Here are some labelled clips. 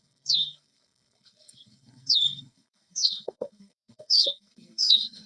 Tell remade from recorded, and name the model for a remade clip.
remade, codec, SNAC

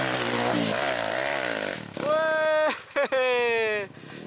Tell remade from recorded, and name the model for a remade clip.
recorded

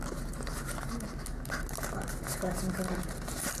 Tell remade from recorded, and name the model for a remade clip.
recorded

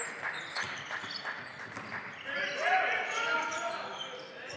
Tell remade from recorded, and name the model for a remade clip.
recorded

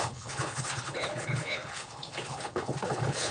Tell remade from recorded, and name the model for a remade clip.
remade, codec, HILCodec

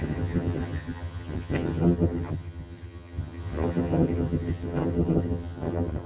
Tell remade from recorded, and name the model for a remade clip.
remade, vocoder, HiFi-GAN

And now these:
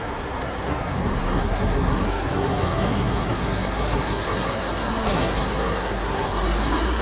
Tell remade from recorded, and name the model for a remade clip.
remade, codec, SNAC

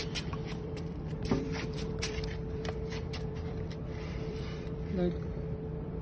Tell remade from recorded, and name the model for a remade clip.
remade, vocoder, BigVGAN v2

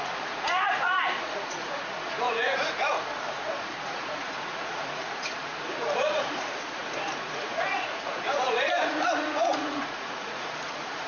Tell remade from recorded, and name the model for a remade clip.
remade, vocoder, Vocos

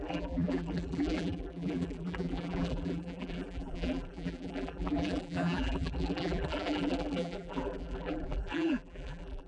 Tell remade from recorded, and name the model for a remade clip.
remade, vocoder, BigVGAN v2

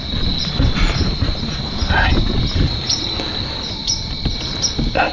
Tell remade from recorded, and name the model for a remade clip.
recorded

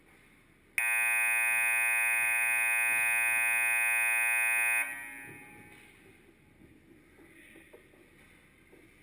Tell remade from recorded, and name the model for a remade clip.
recorded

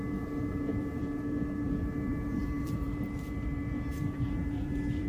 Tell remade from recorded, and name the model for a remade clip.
remade, vocoder, BigVGAN v2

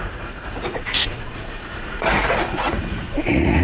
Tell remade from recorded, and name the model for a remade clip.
remade, vocoder, Vocos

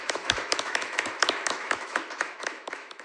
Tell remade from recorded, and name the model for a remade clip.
remade, autoencoder, DAC-VAE